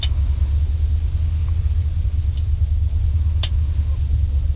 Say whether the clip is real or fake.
real